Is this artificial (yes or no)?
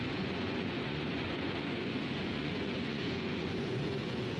yes